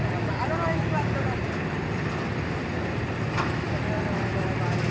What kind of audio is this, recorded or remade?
remade